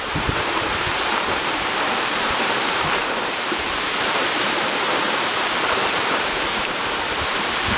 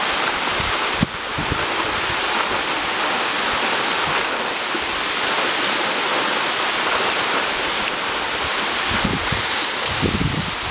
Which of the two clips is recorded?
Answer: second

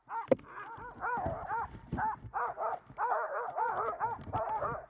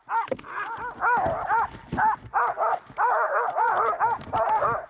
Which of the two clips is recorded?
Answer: second